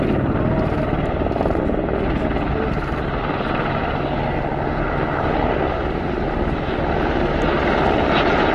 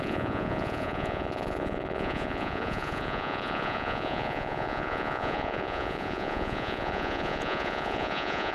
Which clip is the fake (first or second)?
second